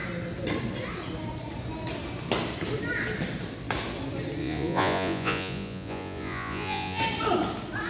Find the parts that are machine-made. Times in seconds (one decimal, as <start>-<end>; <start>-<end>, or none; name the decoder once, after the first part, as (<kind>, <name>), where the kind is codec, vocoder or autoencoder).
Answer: 4.4-7.0 (vocoder, Vocos)